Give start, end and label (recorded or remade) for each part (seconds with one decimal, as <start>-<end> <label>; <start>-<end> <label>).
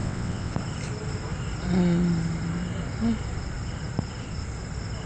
0.0-0.5 remade; 0.5-5.1 recorded